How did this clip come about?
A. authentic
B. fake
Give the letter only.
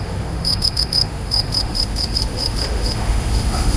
B